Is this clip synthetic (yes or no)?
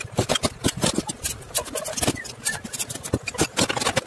no